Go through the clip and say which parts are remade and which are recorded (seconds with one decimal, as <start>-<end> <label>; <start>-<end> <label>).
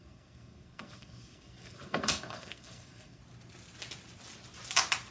0.0-3.2 remade; 3.2-5.1 recorded